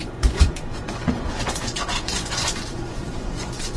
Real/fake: fake